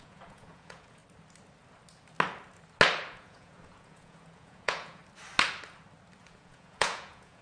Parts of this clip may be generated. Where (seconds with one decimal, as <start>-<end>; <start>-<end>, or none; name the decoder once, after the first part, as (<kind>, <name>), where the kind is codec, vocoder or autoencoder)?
0.0-1.0 (vocoder, Vocos); 3.1-5.0; 6.2-7.4